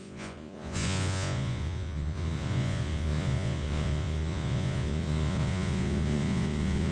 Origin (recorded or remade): remade